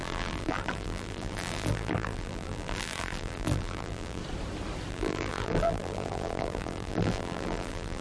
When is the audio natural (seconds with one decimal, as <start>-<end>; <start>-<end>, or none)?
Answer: 4.2-4.9